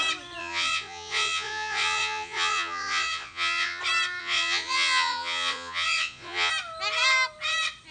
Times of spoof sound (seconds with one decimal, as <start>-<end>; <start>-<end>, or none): 0.4-3.8; 4.2-6.5